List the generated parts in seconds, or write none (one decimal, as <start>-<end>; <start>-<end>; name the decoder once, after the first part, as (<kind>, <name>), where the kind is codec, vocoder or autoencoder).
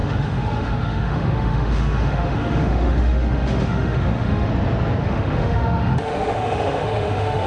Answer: 0.0-4.5 (autoencoder, DAC-VAE); 5.0-7.5